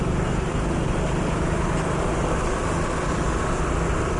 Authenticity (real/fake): real